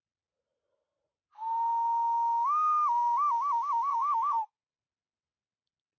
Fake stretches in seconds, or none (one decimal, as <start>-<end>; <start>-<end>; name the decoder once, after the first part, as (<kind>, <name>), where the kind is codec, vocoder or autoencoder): 3.9-4.8 (codec, SNAC)

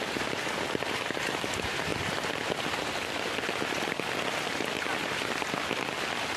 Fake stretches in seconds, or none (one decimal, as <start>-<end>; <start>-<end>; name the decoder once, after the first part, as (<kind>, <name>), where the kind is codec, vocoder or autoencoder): none

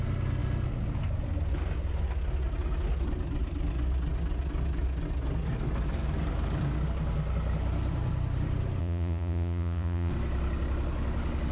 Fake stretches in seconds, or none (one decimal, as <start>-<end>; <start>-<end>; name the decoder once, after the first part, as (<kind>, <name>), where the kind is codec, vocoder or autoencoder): 8.8-10.1 (vocoder, Vocos)

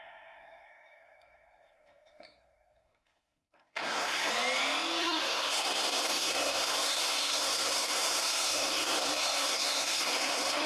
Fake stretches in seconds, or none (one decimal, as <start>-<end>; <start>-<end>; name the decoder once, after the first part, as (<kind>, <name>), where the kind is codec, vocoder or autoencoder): 0.0-4.3 (codec, SNAC); 5.0-10.7

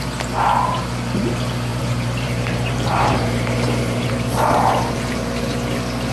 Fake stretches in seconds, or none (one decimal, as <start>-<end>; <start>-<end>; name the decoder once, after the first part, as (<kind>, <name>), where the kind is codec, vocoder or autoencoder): 1.7-5.4 (vocoder, BigVGAN v2)

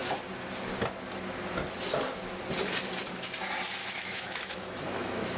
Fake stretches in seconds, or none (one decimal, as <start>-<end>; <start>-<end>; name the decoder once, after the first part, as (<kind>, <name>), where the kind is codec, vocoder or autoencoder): 3.8-5.4 (autoencoder, DAC-VAE)

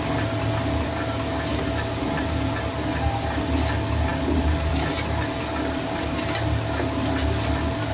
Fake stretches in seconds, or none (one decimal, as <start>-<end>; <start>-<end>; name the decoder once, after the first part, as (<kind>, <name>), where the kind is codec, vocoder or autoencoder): none

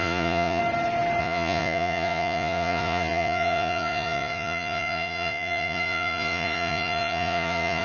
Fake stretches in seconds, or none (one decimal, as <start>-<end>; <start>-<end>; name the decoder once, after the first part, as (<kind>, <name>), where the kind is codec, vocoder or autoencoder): 0.0-0.6 (vocoder, Vocos); 1.2-7.8